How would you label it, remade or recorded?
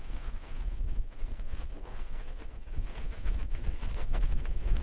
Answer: remade